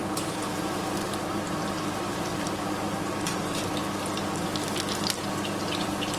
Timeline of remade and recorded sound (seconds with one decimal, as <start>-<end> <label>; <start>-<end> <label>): 0.0-3.8 remade; 3.8-5.8 recorded; 5.8-6.2 remade